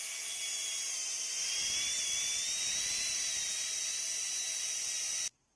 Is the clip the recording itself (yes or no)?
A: yes